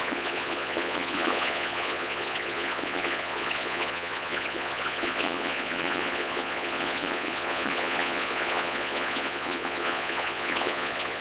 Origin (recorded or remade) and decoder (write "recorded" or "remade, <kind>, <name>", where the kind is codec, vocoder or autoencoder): remade, vocoder, Vocos